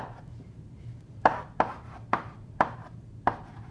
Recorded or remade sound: remade